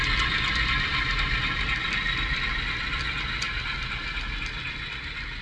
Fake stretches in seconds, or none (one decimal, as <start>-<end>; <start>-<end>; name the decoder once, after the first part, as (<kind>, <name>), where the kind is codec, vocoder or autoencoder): none